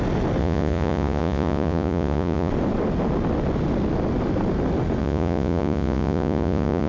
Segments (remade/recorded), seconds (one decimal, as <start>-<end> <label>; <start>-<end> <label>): 0.0-0.4 recorded; 0.4-2.5 remade; 2.5-5.0 recorded; 5.0-6.9 remade